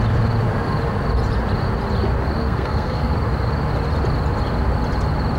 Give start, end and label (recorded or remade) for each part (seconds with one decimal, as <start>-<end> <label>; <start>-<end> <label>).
0.0-2.4 recorded; 2.4-3.1 remade; 3.1-5.4 recorded